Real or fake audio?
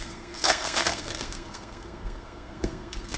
fake